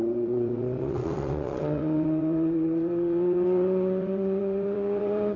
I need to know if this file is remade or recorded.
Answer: remade